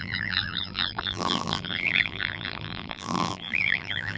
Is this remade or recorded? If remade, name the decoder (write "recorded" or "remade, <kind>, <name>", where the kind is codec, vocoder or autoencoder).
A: remade, vocoder, BigVGAN v2